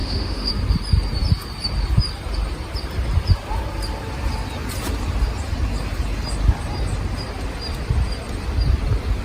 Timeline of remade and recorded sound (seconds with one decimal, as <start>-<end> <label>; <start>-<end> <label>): 0.0-0.5 remade; 0.5-9.2 recorded